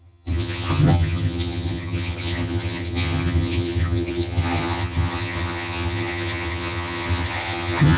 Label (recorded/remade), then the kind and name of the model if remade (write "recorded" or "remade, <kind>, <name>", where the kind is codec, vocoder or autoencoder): remade, vocoder, HiFi-GAN